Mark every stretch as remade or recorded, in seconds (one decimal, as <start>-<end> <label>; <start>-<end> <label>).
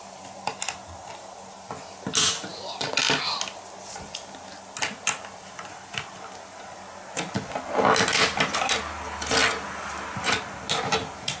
0.0-11.4 recorded